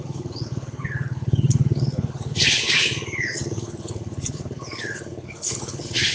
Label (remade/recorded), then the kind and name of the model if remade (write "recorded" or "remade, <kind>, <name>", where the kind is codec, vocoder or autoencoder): remade, codec, HILCodec